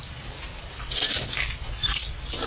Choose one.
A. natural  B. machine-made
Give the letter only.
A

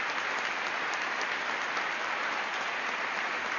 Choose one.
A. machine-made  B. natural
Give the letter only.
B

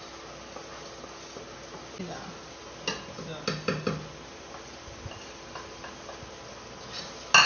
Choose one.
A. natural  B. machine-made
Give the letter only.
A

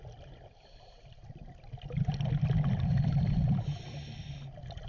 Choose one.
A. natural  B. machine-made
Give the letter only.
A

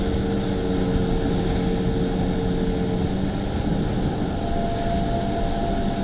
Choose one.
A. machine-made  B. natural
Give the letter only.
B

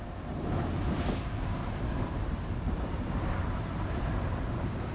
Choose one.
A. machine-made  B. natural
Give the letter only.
A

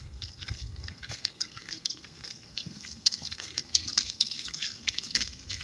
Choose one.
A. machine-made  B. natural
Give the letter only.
A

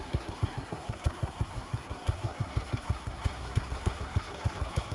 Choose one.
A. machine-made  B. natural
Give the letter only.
A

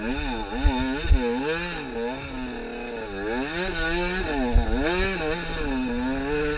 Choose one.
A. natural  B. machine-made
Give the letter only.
A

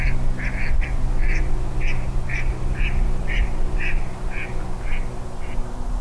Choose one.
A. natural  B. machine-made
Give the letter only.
A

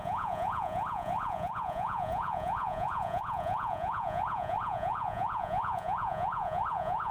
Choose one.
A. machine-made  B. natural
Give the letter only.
A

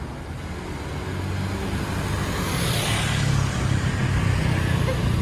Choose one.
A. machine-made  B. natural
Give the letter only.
B